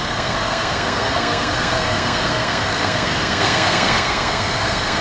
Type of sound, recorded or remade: remade